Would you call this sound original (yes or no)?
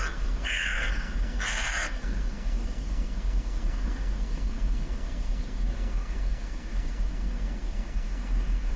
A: no